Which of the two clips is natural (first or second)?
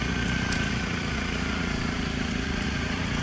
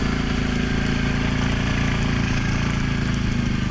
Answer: second